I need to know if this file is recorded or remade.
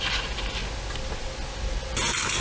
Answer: recorded